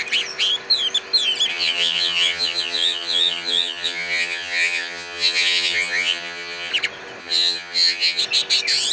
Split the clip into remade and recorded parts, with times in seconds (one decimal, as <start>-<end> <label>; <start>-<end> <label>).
0.0-1.5 recorded; 1.5-6.7 remade; 6.7-7.2 recorded; 7.2-8.2 remade; 8.2-8.9 recorded